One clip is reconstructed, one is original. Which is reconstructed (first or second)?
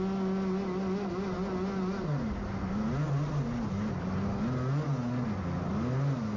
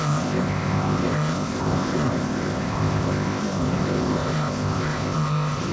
second